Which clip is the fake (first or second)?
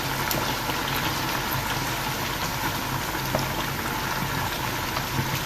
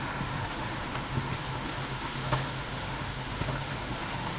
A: second